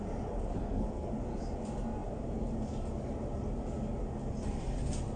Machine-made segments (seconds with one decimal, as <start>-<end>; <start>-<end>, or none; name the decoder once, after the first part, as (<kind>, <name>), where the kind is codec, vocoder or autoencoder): 0.6-1.1 (codec, SNAC)